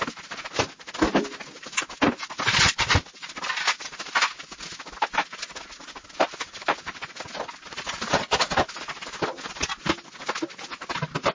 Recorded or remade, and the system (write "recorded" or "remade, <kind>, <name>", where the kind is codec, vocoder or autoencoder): recorded